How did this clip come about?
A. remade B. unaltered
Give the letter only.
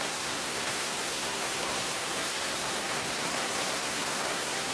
A